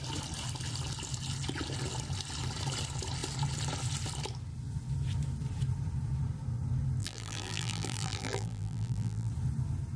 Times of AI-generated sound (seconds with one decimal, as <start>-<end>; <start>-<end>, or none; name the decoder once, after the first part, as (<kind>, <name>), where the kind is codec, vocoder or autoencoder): 7.0-9.3 (vocoder, BigVGAN v2)